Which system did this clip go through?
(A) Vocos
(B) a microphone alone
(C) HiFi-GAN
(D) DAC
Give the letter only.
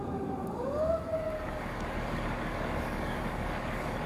D